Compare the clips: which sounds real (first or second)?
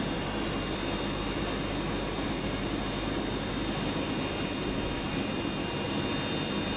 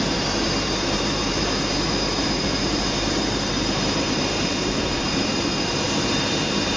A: first